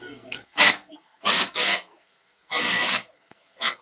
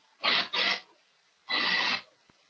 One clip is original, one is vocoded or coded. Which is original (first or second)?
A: second